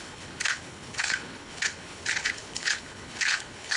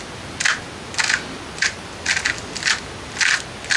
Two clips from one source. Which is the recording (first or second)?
second